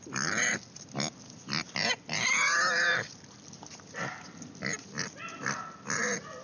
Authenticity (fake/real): real